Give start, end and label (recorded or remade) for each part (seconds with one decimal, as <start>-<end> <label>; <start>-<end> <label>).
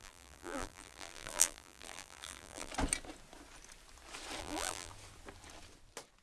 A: 0.0-2.7 remade; 2.7-4.4 recorded; 4.4-4.9 remade; 4.9-6.2 recorded